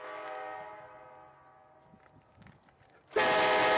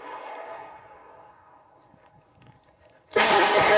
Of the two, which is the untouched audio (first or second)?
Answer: first